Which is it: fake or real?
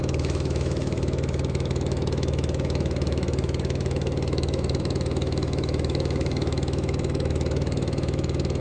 fake